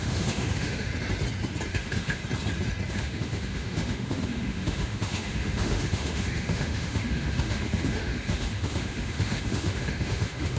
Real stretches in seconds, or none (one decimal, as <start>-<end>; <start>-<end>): 0.9-1.7; 2.2-2.9